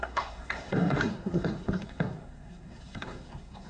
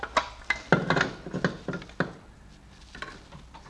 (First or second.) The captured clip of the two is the second